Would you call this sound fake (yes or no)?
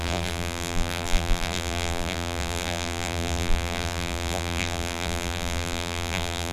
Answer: yes